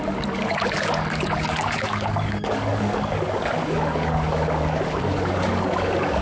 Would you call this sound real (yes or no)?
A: no